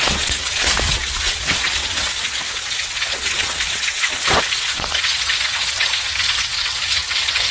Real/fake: fake